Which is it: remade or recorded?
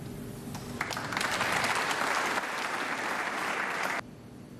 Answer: recorded